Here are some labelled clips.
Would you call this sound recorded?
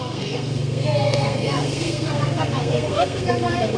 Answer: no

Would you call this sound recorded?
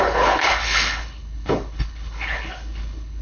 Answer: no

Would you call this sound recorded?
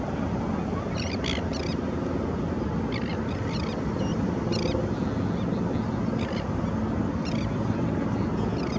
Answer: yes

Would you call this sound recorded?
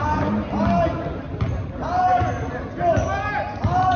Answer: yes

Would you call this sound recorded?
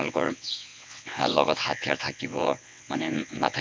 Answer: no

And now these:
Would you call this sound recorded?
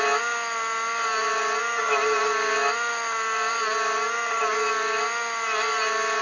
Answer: yes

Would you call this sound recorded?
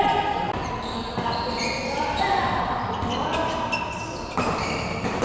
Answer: yes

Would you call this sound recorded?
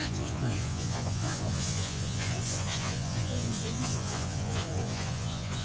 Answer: no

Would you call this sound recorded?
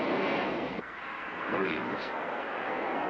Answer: no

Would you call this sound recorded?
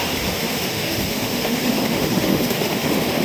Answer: no